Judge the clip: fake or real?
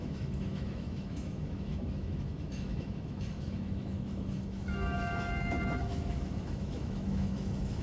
fake